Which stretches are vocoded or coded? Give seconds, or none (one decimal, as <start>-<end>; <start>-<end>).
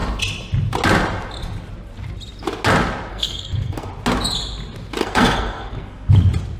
3.1-3.9; 5.0-6.1